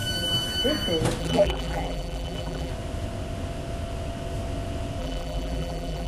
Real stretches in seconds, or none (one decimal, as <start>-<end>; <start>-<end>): 0.0-1.2; 2.7-5.0